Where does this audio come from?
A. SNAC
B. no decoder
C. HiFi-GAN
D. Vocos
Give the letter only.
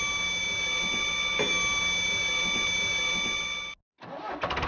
B